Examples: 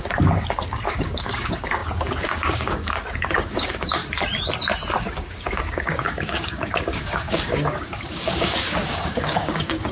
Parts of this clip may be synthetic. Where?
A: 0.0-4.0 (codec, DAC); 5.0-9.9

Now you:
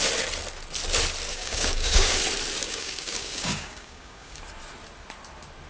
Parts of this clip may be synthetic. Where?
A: 1.3-2.2 (codec, DAC); 2.6-4.4

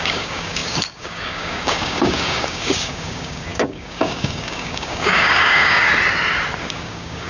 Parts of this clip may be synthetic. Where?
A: 0.0-5.9 (codec, DAC); 6.6-7.3

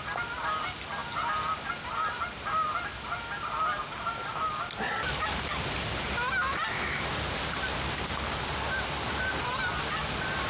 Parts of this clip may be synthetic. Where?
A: none

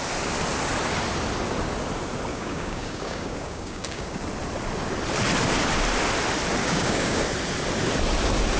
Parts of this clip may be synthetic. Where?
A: 2.3-4.2 (codec, DAC); 6.6-7.2